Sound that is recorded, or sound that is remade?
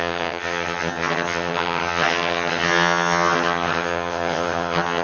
remade